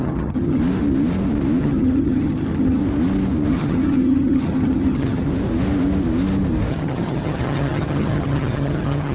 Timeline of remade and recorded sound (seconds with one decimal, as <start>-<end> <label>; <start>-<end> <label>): 0.0-0.6 remade; 0.6-1.6 recorded; 1.6-2.8 remade; 2.8-3.5 recorded; 3.5-5.3 remade; 5.3-6.7 recorded; 6.7-9.1 remade